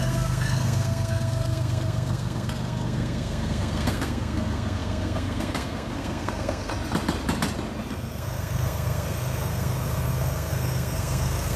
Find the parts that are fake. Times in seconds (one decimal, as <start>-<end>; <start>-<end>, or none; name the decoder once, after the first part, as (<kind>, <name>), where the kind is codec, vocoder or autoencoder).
0.0-6.7 (codec, SNAC); 7.9-11.6